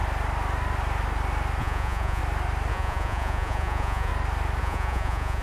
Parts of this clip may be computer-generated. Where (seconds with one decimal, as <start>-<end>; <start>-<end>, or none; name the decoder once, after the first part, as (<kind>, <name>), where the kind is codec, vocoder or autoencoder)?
1.6-2.2 (vocoder, Vocos); 2.7-4.1; 4.6-5.4